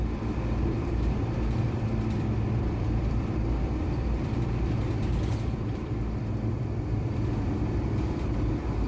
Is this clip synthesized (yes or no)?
yes